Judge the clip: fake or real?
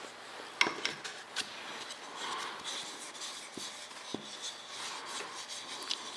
real